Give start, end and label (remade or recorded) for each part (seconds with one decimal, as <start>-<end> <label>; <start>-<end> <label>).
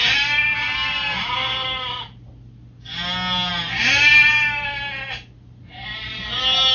0.0-6.7 recorded